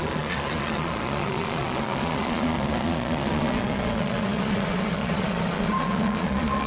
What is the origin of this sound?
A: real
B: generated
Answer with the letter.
B